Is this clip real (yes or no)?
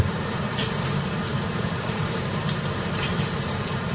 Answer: no